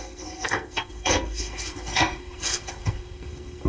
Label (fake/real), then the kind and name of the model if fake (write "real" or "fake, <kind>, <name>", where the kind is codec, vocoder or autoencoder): fake, codec, SNAC